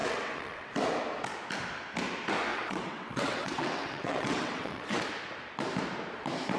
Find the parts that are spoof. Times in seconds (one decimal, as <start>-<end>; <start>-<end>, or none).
0.0-0.7; 2.5-5.0